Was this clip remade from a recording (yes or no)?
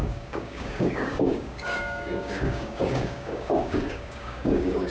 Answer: yes